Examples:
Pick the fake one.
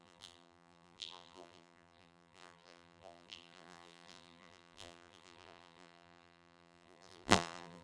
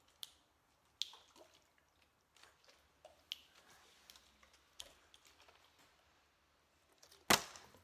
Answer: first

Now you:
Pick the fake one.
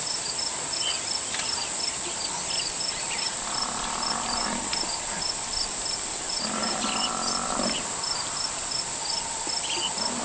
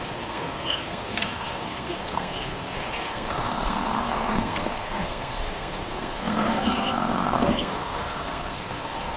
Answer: second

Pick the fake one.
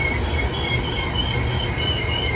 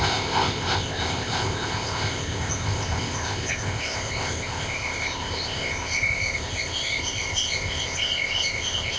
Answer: second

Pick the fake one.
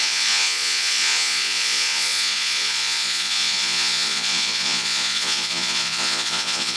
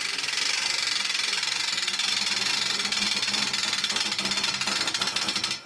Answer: first